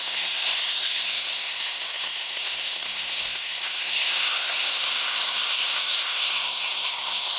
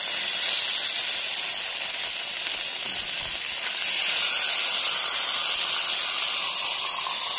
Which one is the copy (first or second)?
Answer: first